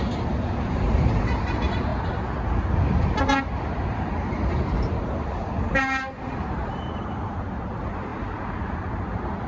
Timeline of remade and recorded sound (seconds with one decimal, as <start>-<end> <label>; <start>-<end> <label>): 0.0-9.5 remade